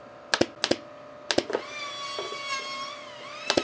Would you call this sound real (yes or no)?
yes